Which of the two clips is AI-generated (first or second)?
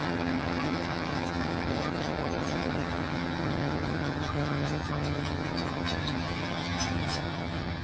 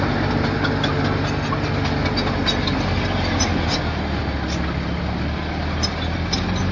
first